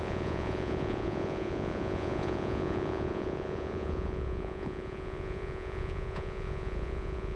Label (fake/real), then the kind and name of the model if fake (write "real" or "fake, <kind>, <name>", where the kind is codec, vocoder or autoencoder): fake, vocoder, Vocos